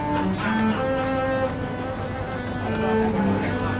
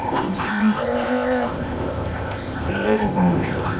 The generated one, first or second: second